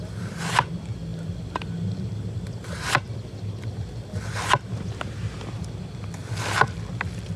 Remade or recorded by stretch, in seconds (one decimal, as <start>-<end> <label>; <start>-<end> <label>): 0.0-7.4 recorded